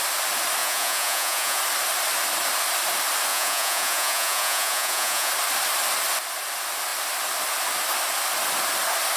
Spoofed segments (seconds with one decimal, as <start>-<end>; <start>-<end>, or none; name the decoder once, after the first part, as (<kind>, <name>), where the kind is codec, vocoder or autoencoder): 0.6-1.6 (vocoder, Vocos); 3.3-5.3